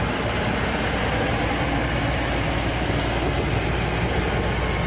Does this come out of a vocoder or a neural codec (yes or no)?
no